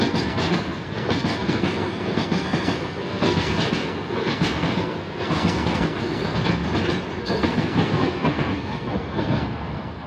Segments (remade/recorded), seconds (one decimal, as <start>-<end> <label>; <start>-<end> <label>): 0.0-6.6 remade; 6.6-7.2 recorded; 7.2-10.1 remade